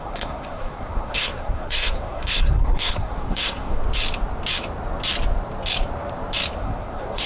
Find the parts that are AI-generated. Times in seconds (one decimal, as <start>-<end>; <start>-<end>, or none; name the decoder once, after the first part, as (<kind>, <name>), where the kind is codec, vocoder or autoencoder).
0.0-3.8 (codec, SNAC); 6.5-7.3